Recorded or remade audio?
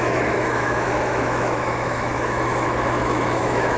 remade